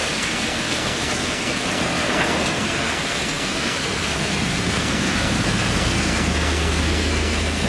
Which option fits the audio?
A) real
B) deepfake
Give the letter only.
B